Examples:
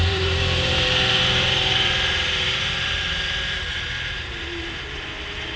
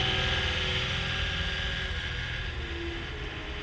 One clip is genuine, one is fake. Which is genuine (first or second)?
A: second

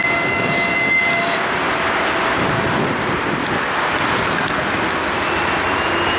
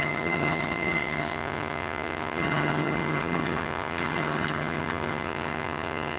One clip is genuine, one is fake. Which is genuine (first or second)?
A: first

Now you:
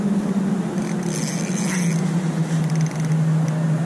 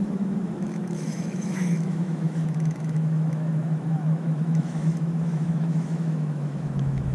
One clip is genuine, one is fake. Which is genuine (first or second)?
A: first